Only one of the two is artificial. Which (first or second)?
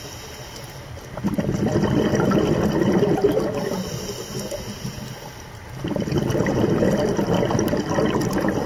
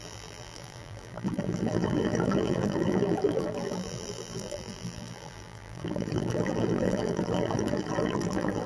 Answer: second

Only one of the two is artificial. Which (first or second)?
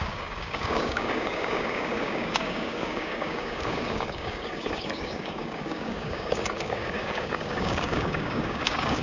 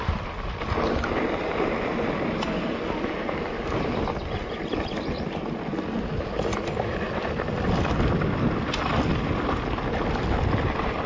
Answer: first